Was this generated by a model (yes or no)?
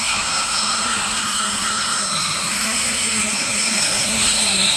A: yes